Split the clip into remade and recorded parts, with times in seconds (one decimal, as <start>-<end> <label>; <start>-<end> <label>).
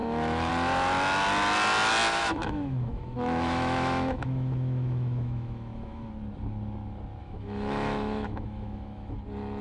0.0-0.5 remade; 0.5-2.1 recorded; 2.1-6.1 remade; 6.1-7.2 recorded; 7.2-9.2 remade; 9.2-9.6 recorded